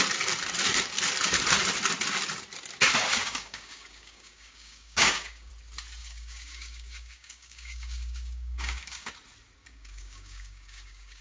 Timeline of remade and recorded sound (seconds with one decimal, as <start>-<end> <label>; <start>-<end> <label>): 0.0-3.1 recorded; 3.1-5.5 remade; 5.5-6.0 recorded; 6.0-9.1 remade; 9.1-9.6 recorded; 9.6-11.2 remade